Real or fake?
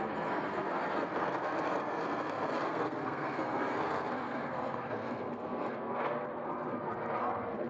fake